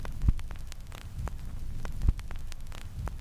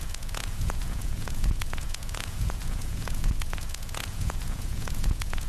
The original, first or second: first